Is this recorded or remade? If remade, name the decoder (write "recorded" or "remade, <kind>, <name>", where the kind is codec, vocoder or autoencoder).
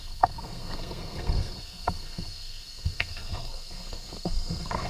remade, codec, SNAC